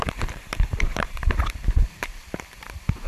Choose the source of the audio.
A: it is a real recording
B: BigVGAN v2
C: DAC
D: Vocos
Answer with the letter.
B